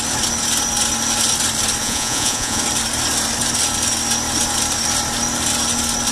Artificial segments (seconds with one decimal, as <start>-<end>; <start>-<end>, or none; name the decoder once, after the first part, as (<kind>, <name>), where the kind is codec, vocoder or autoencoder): 1.8-2.6 (vocoder, Vocos)